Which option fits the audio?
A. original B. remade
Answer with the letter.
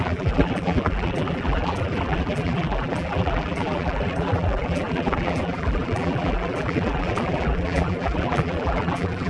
B